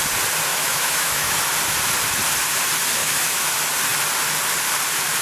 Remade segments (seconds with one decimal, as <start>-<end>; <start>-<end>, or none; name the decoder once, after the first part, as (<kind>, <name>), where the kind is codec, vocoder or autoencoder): 0.5-1.4 (autoencoder, DAC-VAE); 3.0-3.5